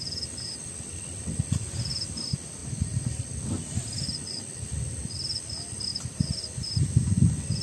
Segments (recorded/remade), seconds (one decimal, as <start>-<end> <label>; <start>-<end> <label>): 0.0-7.6 recorded